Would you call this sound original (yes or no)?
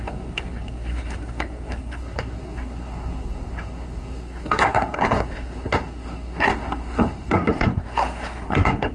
no